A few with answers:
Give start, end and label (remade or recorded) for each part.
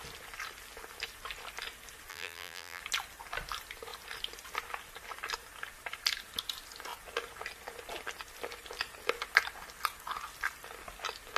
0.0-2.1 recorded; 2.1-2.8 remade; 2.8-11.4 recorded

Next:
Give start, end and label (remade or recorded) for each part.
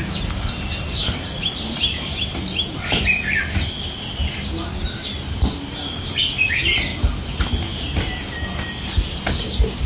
0.0-9.9 recorded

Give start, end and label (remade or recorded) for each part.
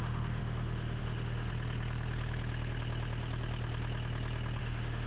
0.0-1.5 remade; 1.5-4.6 recorded; 4.6-5.1 remade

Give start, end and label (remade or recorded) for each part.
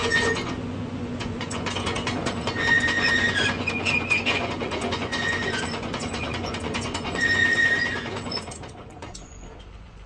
0.0-10.1 remade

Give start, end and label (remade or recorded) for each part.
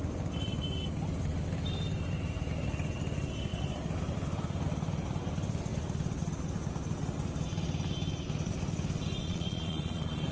0.0-9.2 recorded; 9.2-10.3 remade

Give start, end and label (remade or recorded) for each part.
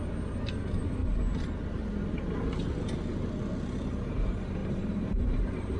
0.0-4.6 recorded; 4.6-5.8 remade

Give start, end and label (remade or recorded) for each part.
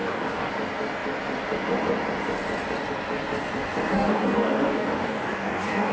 0.0-0.5 remade; 0.5-3.9 recorded; 3.9-5.9 remade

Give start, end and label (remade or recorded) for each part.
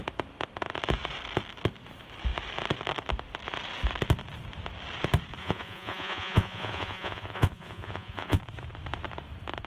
0.0-5.4 recorded; 5.4-8.4 remade; 8.4-9.7 recorded